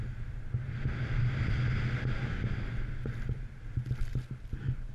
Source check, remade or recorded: recorded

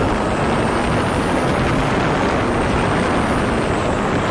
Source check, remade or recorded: recorded